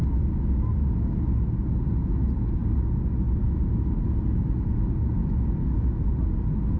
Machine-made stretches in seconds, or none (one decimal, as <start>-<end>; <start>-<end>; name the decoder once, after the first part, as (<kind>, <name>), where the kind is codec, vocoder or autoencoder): none